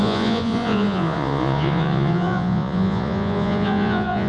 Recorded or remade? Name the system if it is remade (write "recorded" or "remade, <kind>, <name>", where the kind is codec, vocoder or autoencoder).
remade, vocoder, Vocos